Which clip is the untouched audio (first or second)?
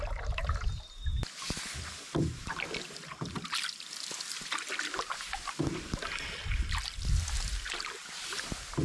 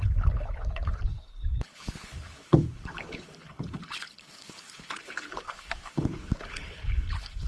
first